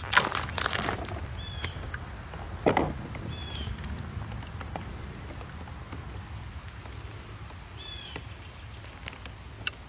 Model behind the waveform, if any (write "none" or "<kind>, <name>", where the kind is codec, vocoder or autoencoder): none